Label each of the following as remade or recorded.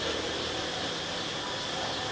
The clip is recorded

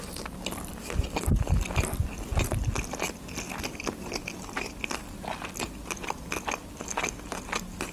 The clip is recorded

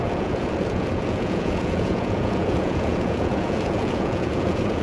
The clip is remade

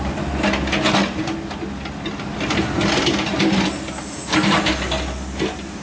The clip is recorded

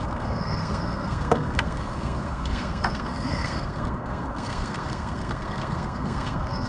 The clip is remade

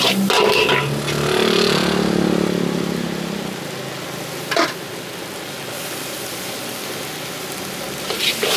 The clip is recorded